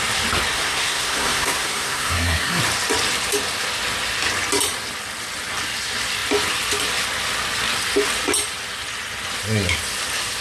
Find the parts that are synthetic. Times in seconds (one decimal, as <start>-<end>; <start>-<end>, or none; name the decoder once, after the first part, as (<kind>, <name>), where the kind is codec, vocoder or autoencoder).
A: 0.5-2.6 (codec, SNAC)